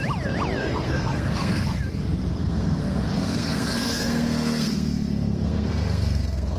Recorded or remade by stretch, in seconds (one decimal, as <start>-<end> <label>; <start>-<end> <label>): 0.0-0.6 recorded; 0.6-1.8 remade; 1.8-2.3 recorded; 2.3-6.6 remade